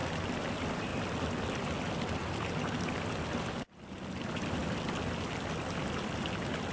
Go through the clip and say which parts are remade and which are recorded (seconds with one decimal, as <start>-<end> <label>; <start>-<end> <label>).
0.0-6.7 recorded